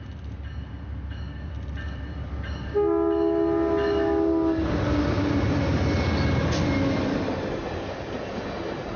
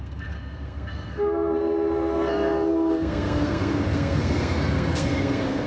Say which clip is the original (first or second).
first